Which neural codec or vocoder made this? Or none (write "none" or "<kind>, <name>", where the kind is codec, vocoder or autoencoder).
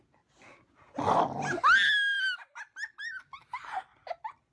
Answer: none